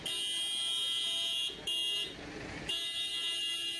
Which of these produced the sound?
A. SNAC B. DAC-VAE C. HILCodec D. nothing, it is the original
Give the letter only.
D